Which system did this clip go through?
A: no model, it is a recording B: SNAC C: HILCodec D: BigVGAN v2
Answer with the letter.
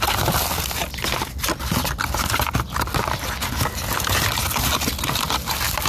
A